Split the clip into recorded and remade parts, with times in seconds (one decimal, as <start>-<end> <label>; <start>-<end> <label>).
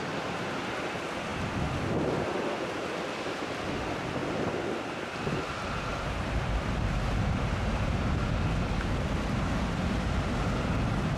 0.0-11.2 recorded